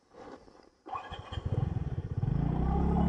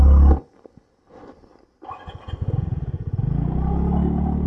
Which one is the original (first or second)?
second